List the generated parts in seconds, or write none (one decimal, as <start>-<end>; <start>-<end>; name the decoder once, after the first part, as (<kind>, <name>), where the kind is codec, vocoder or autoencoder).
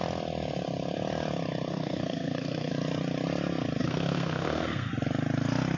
1.7-2.7 (codec, SNAC); 3.8-4.9